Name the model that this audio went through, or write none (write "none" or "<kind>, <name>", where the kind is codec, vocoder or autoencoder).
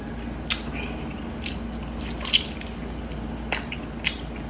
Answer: none